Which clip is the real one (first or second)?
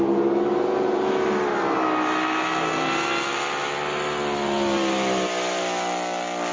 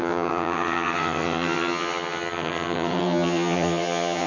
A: first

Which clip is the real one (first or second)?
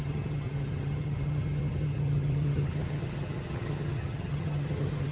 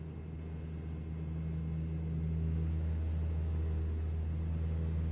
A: second